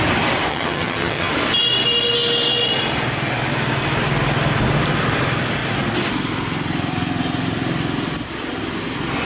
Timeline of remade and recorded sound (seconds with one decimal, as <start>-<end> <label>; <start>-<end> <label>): 0.0-0.5 recorded; 0.5-1.3 remade; 1.3-9.3 recorded